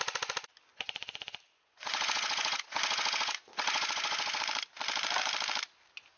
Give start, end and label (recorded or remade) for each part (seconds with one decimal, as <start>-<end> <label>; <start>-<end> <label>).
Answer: 0.0-0.7 recorded; 0.7-4.4 remade; 4.4-6.2 recorded